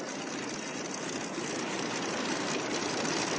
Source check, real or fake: real